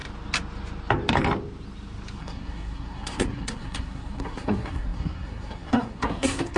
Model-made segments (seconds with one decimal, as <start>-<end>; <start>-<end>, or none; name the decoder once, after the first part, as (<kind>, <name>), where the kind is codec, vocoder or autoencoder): 2.2-6.6 (codec, SNAC)